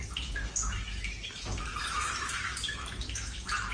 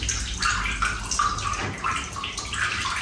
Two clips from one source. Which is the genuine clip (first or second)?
second